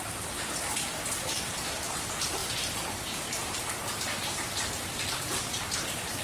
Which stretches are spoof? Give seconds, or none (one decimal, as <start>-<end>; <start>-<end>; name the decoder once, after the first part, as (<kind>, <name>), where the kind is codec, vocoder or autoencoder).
0.0-6.2 (vocoder, BigVGAN v2)